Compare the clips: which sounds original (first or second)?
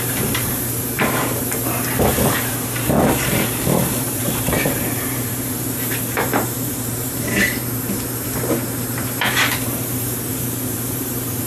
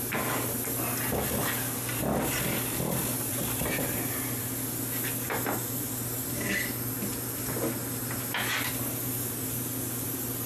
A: second